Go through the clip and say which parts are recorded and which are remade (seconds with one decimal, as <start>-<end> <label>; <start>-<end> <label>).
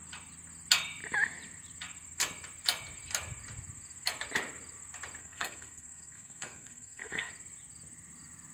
0.0-5.2 recorded; 5.2-7.3 remade; 7.3-8.5 recorded